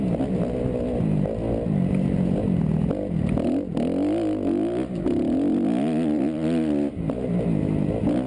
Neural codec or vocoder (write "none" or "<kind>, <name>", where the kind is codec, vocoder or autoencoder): none